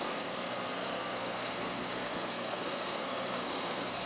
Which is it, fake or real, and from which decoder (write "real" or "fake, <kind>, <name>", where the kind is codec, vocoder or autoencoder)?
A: fake, codec, SNAC